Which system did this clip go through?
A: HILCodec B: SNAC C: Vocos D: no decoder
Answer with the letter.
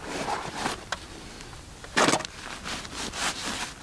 D